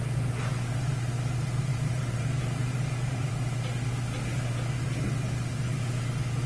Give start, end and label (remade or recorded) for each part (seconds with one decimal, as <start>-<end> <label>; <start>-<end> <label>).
0.0-1.7 recorded; 1.7-3.3 remade; 3.3-6.5 recorded